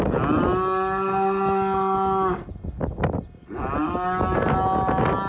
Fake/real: real